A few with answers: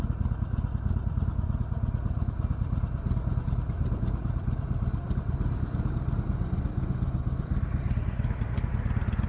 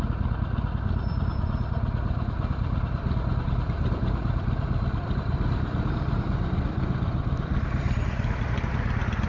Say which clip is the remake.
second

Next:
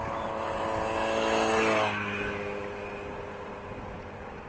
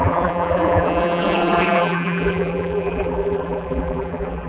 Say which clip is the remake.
second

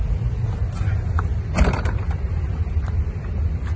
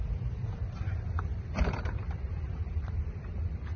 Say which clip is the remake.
second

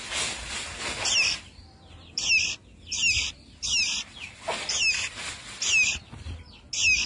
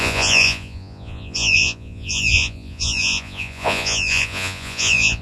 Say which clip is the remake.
second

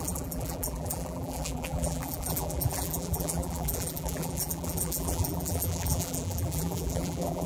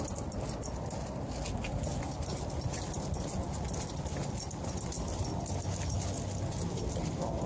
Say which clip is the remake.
first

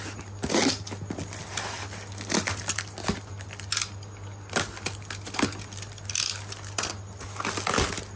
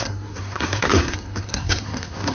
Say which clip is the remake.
second